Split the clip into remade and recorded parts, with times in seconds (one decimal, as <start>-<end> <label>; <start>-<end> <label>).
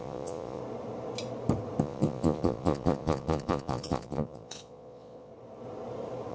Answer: 0.0-0.6 remade; 0.6-1.8 recorded; 1.8-5.3 remade; 5.3-6.3 recorded